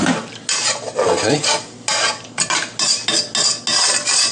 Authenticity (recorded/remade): recorded